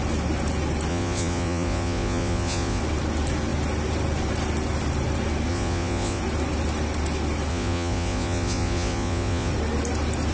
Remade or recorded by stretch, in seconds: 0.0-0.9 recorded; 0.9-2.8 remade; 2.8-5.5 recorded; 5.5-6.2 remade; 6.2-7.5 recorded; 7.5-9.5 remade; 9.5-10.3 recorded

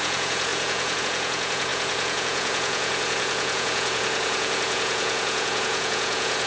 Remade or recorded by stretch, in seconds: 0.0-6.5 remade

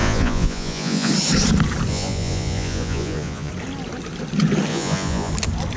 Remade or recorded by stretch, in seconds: 0.0-1.1 remade; 1.1-1.9 recorded; 1.9-3.5 remade; 3.5-4.7 recorded; 4.7-5.3 remade; 5.3-5.8 recorded